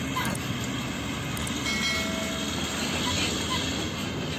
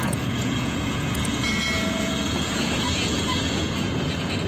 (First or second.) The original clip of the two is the first